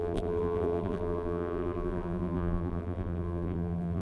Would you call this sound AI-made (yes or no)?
yes